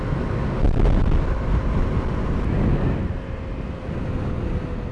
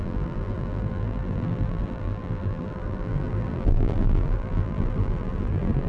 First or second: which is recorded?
first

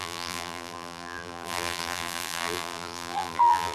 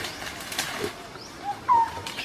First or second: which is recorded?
second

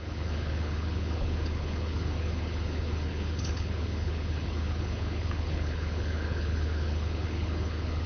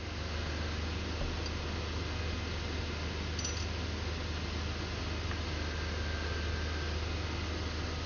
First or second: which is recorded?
second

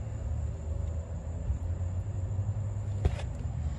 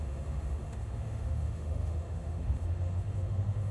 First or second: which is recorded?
first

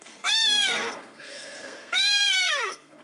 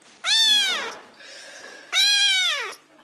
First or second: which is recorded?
second